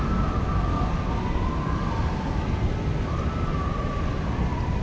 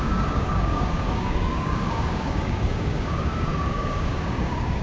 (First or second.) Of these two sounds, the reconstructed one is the second